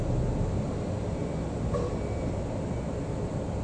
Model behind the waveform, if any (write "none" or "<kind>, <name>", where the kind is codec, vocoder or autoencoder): none